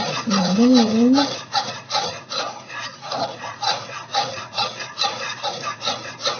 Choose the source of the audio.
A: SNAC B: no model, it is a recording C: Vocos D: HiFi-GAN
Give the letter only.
C